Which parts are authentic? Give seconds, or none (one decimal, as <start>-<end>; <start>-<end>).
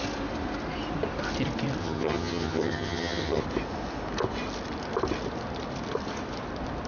0.0-1.8; 3.4-6.9